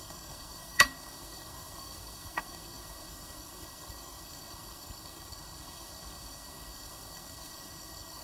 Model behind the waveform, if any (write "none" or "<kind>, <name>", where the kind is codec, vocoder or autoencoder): codec, SNAC